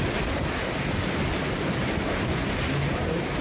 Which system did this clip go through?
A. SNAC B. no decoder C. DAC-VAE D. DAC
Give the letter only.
B